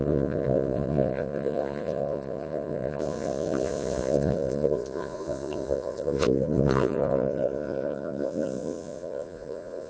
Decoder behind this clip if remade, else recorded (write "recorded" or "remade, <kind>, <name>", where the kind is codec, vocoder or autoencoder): remade, vocoder, Vocos